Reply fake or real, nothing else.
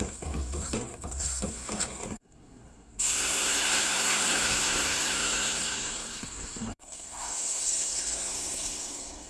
fake